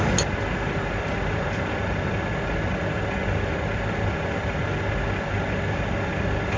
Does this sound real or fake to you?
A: real